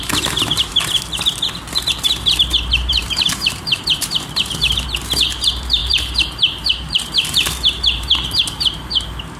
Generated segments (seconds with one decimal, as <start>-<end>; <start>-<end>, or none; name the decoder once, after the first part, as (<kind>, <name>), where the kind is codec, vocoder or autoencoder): 0.0-0.7 (vocoder, BigVGAN v2); 2.2-9.4